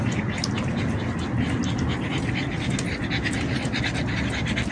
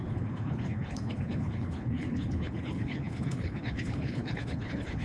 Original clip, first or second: first